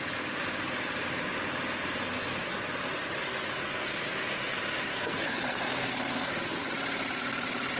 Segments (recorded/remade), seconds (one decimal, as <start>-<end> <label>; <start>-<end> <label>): 0.0-4.9 recorded; 4.9-6.3 remade; 6.3-7.8 recorded